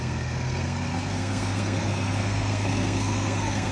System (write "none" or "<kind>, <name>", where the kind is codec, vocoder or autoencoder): codec, SNAC